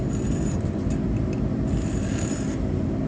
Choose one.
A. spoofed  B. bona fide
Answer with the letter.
B